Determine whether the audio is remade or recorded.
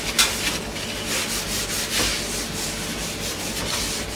recorded